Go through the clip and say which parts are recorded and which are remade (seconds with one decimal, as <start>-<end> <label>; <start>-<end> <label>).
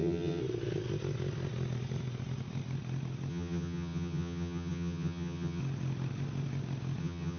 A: 0.0-0.4 remade; 0.4-3.3 recorded; 3.3-5.6 remade; 5.6-7.0 recorded; 7.0-7.4 remade